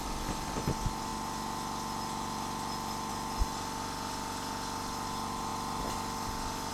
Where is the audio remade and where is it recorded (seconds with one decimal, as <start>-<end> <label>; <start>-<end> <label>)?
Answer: 0.0-6.7 recorded